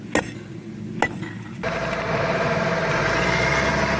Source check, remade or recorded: recorded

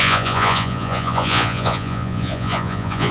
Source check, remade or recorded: remade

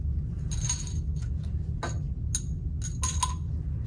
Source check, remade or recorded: recorded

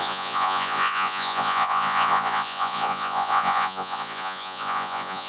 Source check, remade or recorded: remade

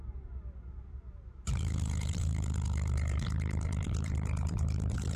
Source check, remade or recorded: remade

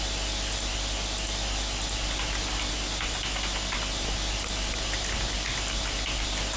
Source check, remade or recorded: recorded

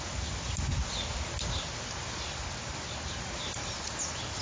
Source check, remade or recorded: recorded